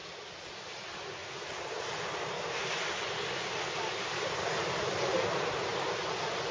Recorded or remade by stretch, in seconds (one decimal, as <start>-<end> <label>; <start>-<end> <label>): 0.0-1.2 recorded; 1.2-5.1 remade; 5.1-6.5 recorded